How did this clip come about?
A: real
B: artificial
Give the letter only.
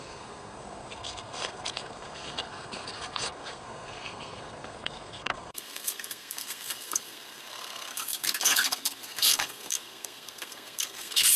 B